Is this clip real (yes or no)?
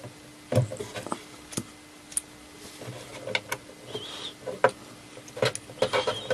yes